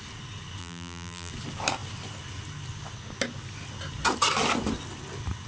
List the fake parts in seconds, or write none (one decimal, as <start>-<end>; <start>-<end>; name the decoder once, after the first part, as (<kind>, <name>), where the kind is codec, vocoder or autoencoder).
0.6-1.3 (vocoder, BigVGAN v2)